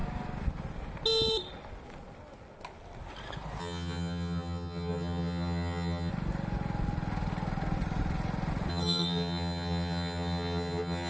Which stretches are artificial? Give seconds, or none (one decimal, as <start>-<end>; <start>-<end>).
3.6-6.1; 8.7-11.1